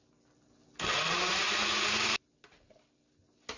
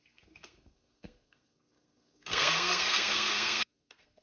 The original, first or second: first